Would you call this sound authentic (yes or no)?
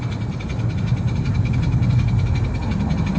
yes